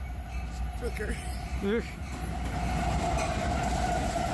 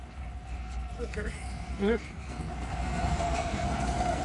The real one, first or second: first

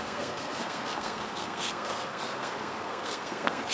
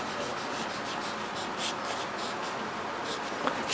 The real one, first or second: second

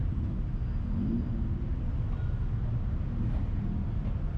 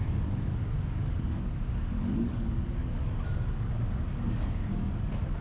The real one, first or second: first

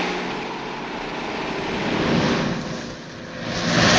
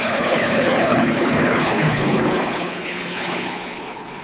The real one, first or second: first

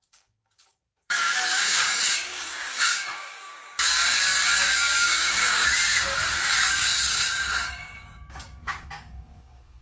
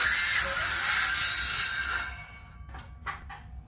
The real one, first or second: second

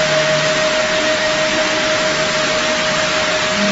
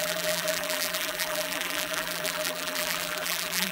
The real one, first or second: first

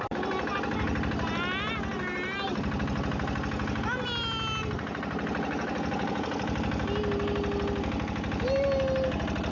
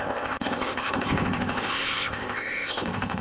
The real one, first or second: first